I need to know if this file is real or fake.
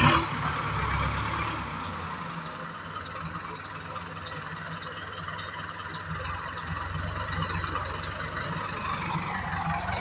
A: real